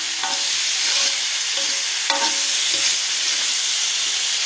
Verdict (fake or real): real